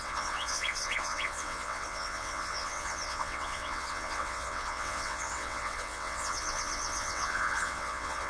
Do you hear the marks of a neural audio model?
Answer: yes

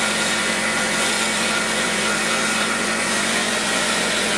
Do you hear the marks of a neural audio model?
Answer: yes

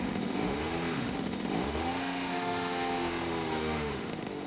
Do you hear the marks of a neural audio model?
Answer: yes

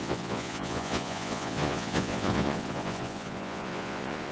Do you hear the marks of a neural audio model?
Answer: yes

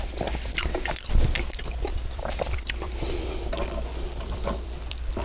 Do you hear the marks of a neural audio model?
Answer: yes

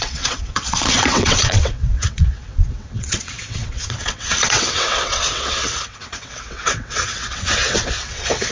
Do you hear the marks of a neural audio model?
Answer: yes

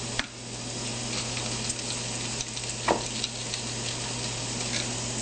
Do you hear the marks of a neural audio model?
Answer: no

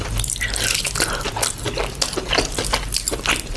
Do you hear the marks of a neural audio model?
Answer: no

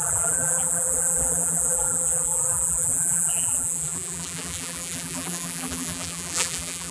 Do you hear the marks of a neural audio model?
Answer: yes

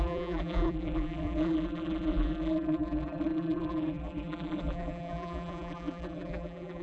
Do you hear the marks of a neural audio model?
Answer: yes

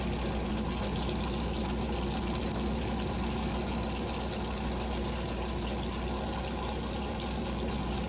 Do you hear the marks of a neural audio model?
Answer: no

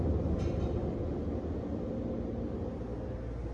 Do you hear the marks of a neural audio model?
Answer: no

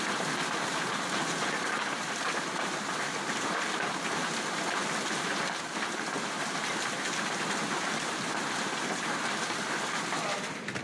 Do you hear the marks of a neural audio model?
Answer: no